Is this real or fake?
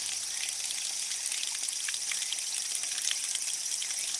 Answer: real